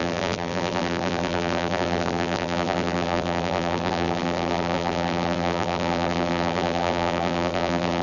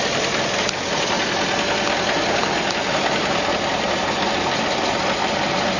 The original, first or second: second